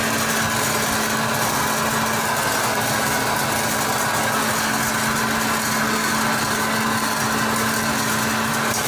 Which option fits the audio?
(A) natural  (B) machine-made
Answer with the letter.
A